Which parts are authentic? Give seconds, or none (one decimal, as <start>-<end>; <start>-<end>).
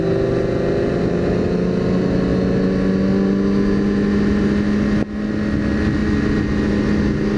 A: 0.0-7.4